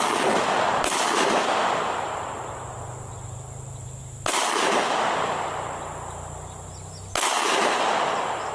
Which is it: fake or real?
real